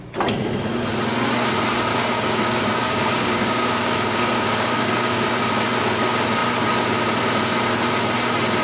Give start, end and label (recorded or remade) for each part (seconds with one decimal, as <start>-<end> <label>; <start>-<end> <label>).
0.0-1.9 recorded; 1.9-5.3 remade; 5.3-8.6 recorded

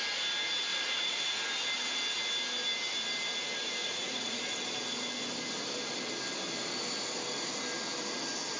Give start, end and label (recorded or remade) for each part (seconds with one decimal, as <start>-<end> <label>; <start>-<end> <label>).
0.0-0.7 recorded; 0.7-1.5 remade; 1.5-3.8 recorded; 3.8-4.4 remade; 4.4-8.6 recorded

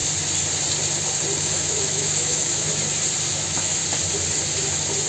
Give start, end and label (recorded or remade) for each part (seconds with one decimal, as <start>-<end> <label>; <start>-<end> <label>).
0.0-1.4 recorded; 1.4-2.7 remade; 2.7-3.3 recorded; 3.3-3.8 remade; 3.8-5.1 recorded